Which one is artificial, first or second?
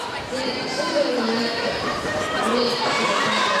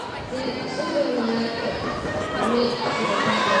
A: first